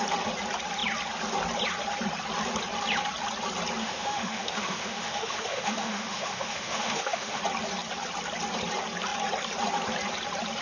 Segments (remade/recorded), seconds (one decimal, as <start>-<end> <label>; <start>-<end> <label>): 0.0-3.8 recorded; 3.8-7.4 remade; 7.4-10.6 recorded